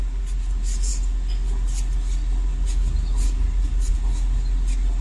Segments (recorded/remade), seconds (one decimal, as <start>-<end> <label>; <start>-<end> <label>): 0.0-5.0 recorded